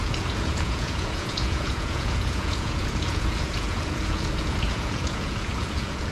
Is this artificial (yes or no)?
yes